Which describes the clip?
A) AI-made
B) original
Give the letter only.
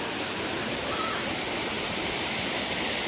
B